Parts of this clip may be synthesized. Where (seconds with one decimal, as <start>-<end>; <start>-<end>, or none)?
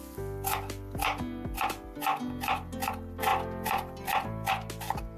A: none